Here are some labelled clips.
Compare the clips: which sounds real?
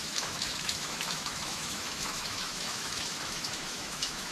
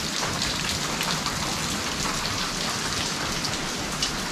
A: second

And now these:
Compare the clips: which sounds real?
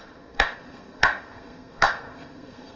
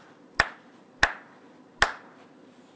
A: second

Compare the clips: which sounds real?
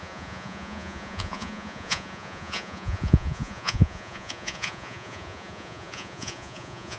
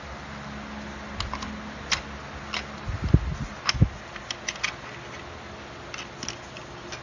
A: second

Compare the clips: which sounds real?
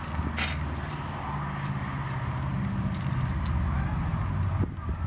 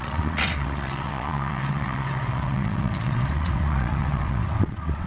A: first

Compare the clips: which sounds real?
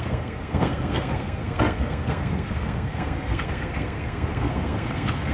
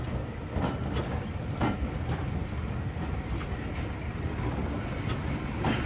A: second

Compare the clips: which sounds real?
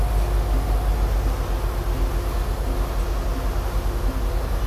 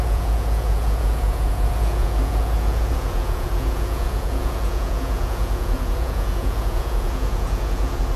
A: first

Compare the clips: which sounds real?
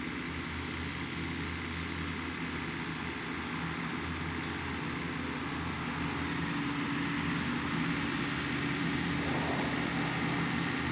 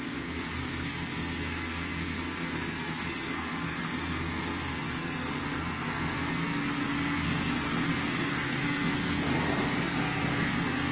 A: first